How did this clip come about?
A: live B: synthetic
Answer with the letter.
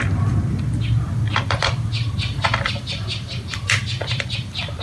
B